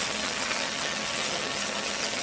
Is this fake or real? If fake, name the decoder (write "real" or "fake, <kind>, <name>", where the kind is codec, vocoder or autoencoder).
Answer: fake, vocoder, HiFi-GAN